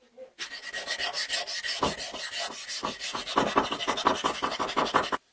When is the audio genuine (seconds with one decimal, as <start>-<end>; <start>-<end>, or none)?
0.0-5.3